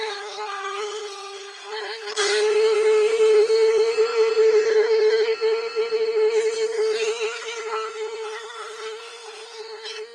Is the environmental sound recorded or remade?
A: remade